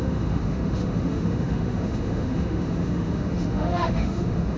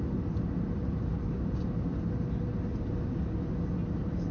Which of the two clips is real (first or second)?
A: second